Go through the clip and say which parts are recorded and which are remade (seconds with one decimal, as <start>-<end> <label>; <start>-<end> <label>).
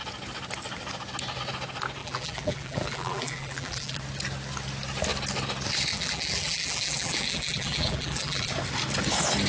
0.0-2.0 recorded; 2.0-4.0 remade; 4.0-5.9 recorded; 5.9-8.5 remade; 8.5-9.5 recorded